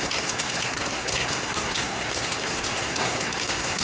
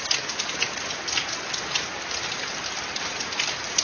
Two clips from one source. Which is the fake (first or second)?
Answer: first